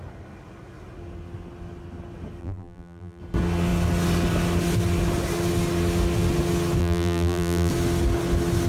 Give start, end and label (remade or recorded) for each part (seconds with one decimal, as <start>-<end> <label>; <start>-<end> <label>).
0.0-2.4 recorded; 2.4-3.2 remade; 3.2-6.8 recorded; 6.8-7.7 remade; 7.7-8.7 recorded

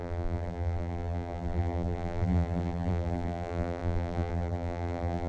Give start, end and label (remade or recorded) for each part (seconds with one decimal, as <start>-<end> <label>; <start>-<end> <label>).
0.0-5.3 remade

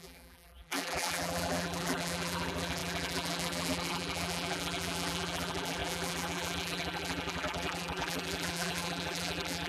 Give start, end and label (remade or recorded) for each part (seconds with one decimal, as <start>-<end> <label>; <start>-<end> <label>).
0.0-9.7 remade

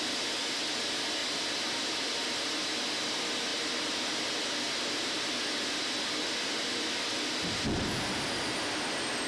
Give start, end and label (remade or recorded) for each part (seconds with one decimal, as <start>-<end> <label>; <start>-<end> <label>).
0.0-9.3 recorded

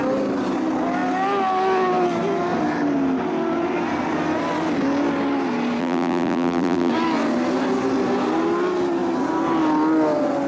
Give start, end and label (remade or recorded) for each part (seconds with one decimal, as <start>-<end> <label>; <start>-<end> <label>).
0.0-5.8 recorded; 5.8-6.9 remade; 6.9-10.5 recorded